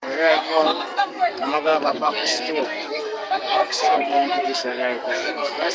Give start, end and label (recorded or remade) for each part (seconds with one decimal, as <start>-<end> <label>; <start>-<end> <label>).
0.0-5.7 remade